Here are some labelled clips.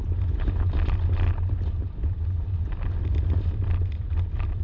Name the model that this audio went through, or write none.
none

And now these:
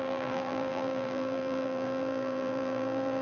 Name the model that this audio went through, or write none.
vocoder, BigVGAN v2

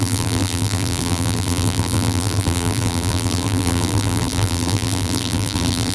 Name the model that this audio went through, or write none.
vocoder, BigVGAN v2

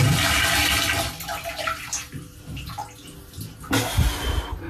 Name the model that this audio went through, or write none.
none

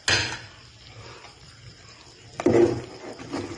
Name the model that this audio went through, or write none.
none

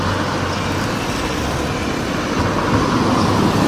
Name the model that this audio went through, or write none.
none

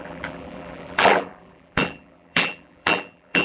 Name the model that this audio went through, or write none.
vocoder, BigVGAN v2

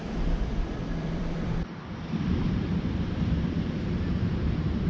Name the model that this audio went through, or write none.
vocoder, BigVGAN v2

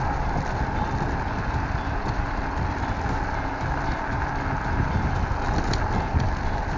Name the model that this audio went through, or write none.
none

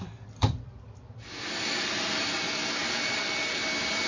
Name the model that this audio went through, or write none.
vocoder, BigVGAN v2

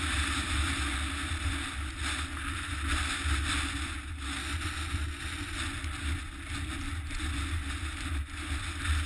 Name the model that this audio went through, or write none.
none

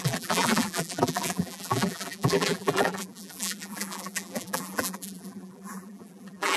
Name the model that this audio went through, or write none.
vocoder, BigVGAN v2